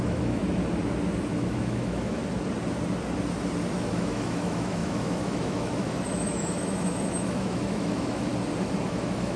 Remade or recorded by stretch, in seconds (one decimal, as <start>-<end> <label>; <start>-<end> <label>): 0.0-0.4 remade; 0.4-1.3 recorded; 1.3-2.2 remade; 2.2-3.9 recorded; 3.9-8.3 remade; 8.3-8.8 recorded; 8.8-9.4 remade